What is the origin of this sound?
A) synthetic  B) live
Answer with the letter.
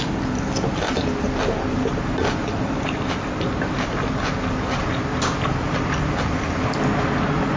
B